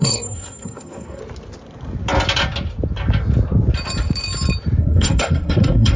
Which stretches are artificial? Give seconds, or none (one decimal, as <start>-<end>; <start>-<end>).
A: 0.0-1.2; 4.8-6.0